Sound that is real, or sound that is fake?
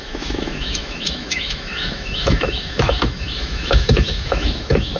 fake